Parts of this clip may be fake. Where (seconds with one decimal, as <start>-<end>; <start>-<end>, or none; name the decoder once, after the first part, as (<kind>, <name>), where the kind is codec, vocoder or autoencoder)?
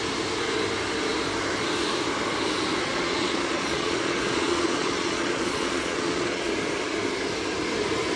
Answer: 2.9-6.5 (vocoder, Vocos)